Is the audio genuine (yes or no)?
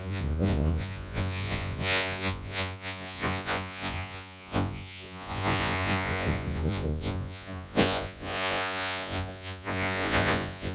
no